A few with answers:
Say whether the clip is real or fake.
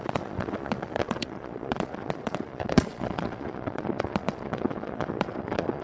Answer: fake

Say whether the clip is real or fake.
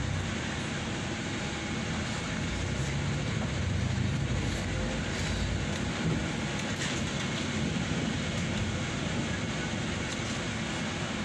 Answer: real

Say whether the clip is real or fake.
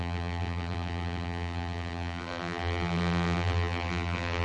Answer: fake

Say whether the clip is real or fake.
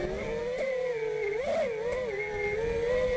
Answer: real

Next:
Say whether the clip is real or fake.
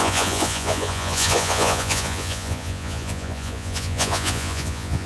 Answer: fake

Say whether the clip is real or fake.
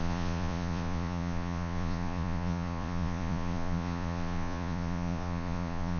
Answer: fake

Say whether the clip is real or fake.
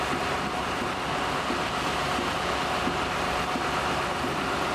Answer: real